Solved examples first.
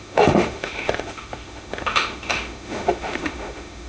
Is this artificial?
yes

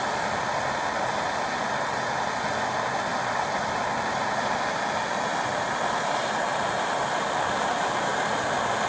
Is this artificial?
no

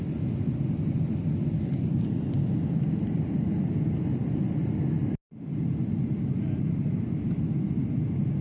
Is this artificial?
no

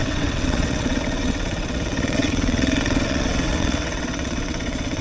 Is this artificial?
yes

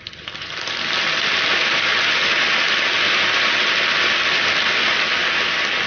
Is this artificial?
no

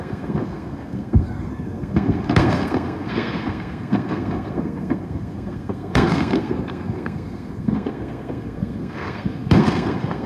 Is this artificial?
yes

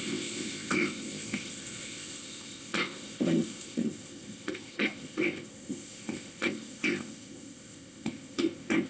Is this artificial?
yes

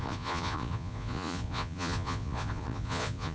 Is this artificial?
yes